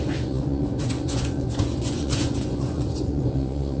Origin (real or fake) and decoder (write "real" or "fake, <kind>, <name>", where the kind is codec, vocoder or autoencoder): fake, vocoder, Vocos